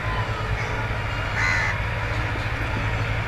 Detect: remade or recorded recorded